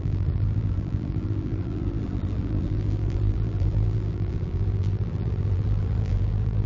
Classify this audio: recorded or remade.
remade